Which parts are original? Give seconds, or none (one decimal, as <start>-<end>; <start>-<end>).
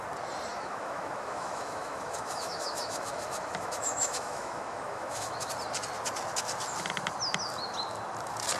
0.0-0.5; 5.5-8.6